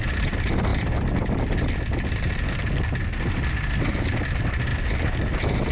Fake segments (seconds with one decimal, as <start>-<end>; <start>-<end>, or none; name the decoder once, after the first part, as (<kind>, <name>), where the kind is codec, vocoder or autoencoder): none